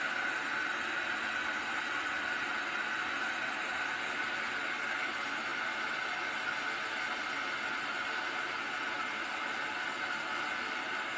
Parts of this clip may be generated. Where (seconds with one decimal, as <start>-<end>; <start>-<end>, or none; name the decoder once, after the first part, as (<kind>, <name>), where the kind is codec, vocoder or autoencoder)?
none